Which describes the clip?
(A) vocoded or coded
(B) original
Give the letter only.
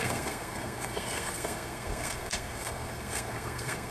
A